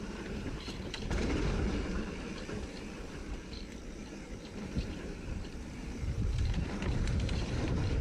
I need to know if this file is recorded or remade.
remade